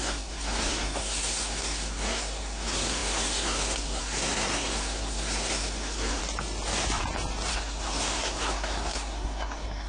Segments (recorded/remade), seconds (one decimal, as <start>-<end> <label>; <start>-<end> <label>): 0.0-6.2 remade; 6.2-7.5 recorded; 7.5-9.9 remade